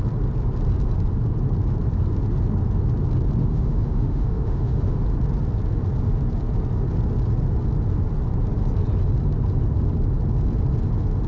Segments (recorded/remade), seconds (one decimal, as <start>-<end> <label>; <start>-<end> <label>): 0.0-3.4 recorded; 3.4-5.0 remade; 5.0-11.3 recorded

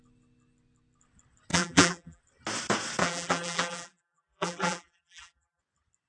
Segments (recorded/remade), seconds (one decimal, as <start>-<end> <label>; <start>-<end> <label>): 0.0-1.5 recorded; 1.5-2.2 remade; 2.2-3.0 recorded; 3.0-5.6 remade; 5.6-6.1 recorded

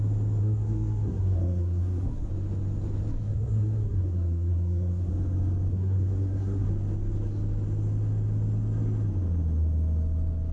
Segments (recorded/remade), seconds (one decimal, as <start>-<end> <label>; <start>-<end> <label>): 0.0-0.4 recorded; 0.4-2.3 remade; 2.3-3.1 recorded; 3.1-5.1 remade; 5.1-5.7 recorded; 5.7-6.7 remade; 6.7-10.5 recorded

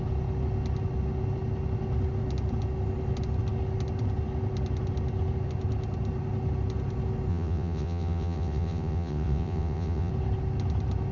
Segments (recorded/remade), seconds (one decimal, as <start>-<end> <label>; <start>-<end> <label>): 0.0-7.3 recorded; 7.3-10.1 remade; 10.1-11.1 recorded

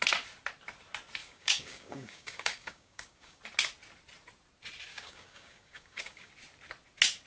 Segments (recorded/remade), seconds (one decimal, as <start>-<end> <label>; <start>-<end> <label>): 0.0-1.2 recorded; 1.2-3.4 remade; 3.4-4.9 recorded; 4.9-6.3 remade; 6.3-7.3 recorded

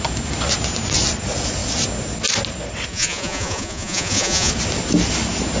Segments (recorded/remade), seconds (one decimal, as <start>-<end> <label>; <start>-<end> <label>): 0.0-2.9 recorded; 2.9-4.5 remade; 4.5-5.6 recorded

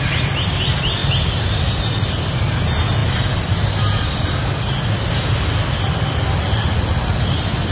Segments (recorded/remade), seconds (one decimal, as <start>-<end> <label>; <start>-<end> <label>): 0.0-7.7 recorded